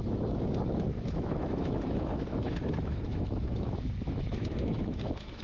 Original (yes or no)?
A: no